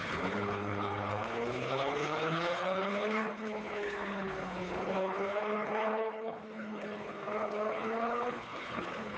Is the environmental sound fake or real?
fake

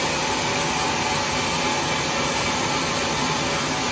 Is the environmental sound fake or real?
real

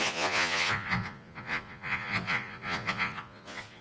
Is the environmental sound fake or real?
fake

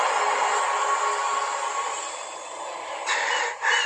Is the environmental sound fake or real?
real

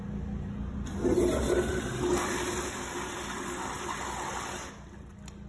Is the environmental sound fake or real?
real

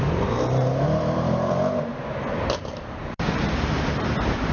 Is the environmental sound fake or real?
fake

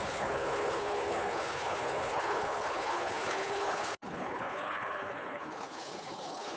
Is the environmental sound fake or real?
fake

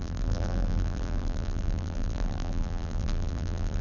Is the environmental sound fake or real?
fake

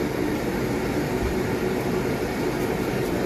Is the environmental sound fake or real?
fake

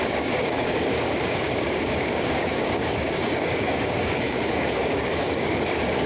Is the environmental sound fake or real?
fake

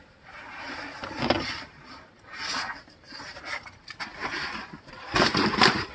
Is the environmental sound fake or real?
fake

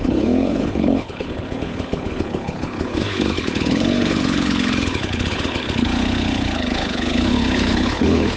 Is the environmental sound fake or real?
fake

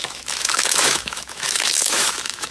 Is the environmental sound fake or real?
fake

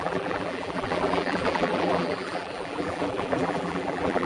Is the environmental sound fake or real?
fake